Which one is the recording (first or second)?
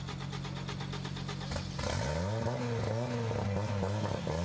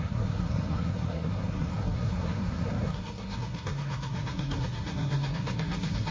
first